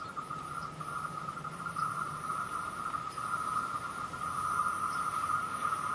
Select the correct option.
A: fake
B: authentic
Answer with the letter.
A